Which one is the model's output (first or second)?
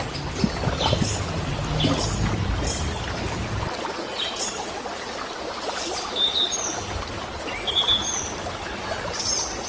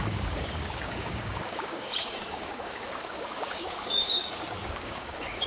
second